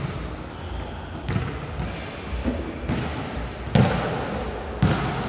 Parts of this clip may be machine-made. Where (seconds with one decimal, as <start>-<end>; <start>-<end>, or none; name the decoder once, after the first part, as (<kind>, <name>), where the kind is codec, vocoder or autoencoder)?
none